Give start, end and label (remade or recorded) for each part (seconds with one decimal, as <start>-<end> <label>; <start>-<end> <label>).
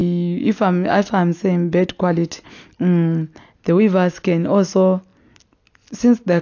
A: 0.0-6.4 recorded